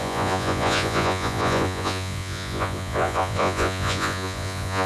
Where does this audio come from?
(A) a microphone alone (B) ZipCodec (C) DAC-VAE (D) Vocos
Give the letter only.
D